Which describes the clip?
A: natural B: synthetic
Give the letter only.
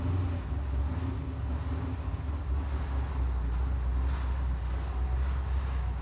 A